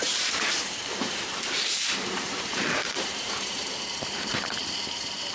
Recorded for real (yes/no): no